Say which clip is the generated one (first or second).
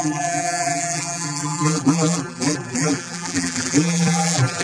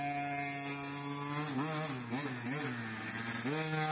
first